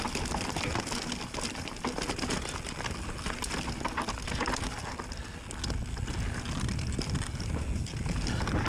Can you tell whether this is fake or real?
real